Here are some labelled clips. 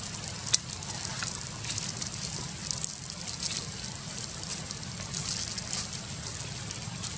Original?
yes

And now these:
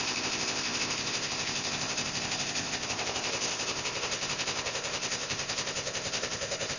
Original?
no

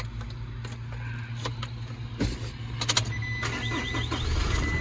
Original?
yes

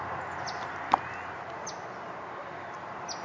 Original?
yes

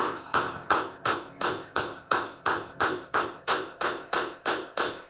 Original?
no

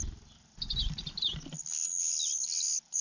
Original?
yes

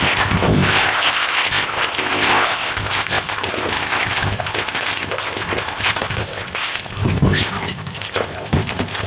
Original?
no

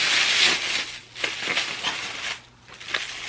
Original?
yes